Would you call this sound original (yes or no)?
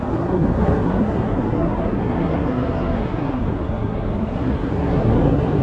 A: no